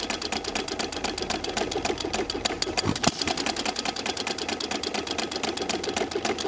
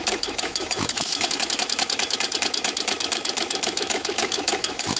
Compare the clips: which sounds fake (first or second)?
second